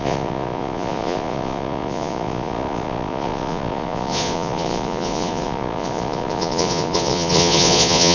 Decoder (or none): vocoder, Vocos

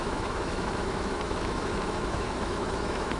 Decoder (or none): autoencoder, DAC-VAE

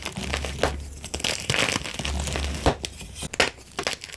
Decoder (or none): none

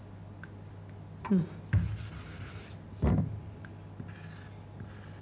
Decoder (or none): none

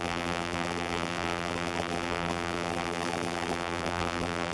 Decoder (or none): vocoder, BigVGAN v2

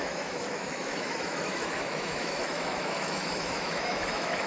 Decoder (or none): autoencoder, DAC-VAE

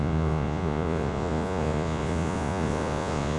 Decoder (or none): vocoder, Vocos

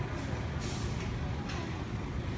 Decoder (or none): none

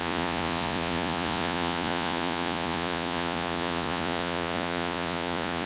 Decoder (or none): vocoder, Vocos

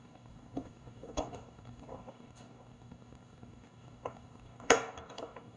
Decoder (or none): codec, DAC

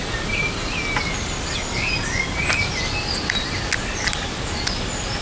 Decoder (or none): none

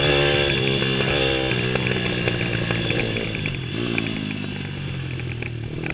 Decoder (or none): none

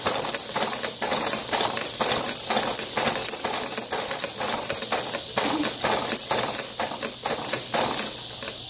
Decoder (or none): none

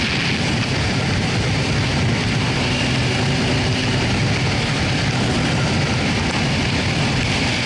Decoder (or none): none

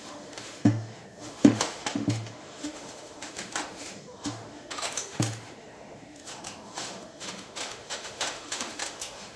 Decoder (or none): autoencoder, DAC-VAE